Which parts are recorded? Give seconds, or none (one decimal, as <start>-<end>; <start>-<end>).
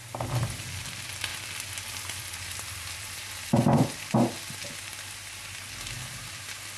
0.0-6.8